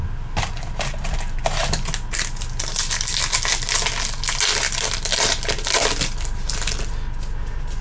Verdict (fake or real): real